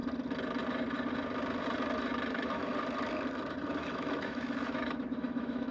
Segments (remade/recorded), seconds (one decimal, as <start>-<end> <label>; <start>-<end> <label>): 0.0-2.3 recorded; 2.3-2.7 remade; 2.7-3.7 recorded; 3.7-5.7 remade